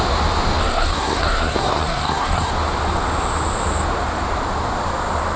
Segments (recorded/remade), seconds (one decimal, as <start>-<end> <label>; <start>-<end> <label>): 0.0-0.6 recorded; 0.6-2.5 remade; 2.5-5.4 recorded